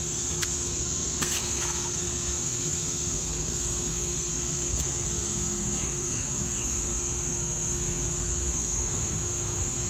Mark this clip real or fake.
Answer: fake